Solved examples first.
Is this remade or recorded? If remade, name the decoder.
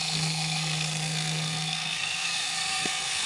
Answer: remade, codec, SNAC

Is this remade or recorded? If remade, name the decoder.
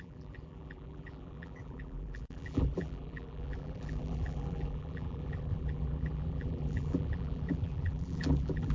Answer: remade, vocoder, BigVGAN v2